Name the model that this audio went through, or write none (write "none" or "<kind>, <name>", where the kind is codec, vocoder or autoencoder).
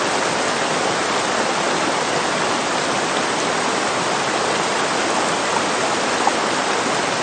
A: none